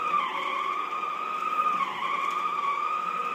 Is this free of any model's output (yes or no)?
yes